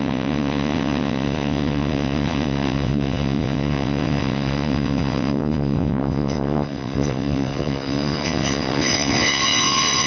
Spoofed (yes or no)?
yes